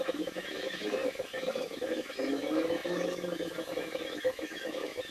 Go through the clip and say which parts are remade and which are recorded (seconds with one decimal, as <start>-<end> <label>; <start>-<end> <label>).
0.0-5.1 remade